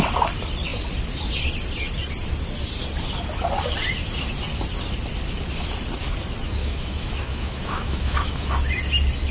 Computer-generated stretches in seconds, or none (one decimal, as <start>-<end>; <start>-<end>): 6.6-8.5